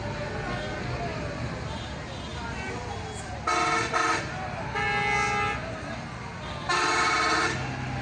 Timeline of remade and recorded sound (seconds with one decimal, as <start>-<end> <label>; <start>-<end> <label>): 0.0-1.1 recorded; 1.1-1.8 remade; 1.8-2.3 recorded; 2.3-3.2 remade; 3.2-8.0 recorded